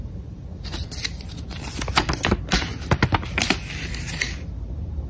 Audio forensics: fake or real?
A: real